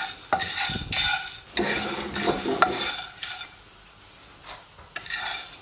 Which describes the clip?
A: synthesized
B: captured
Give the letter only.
B